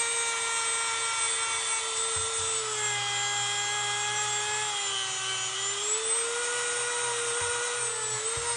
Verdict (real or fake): real